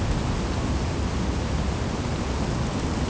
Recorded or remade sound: recorded